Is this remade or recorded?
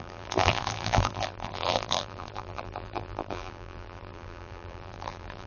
remade